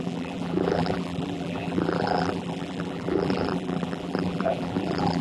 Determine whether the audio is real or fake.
fake